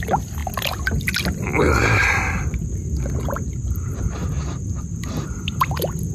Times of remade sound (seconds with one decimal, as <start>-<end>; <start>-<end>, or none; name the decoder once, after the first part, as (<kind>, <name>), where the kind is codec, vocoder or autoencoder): 1.8-5.1 (vocoder, BigVGAN v2)